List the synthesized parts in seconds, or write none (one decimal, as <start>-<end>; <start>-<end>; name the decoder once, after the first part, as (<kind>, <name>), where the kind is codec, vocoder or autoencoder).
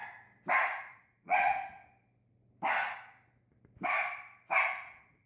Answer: 0.8-1.5 (vocoder, Vocos); 4.7-5.3